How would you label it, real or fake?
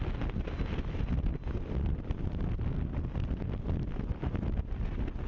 real